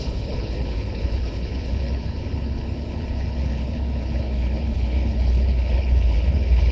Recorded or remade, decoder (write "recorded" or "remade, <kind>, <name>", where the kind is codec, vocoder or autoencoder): remade, codec, HILCodec